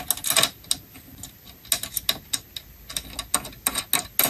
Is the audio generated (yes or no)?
no